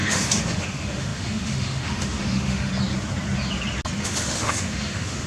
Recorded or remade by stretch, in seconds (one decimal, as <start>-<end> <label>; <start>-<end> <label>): 0.0-2.7 remade; 2.7-4.0 recorded; 4.0-5.3 remade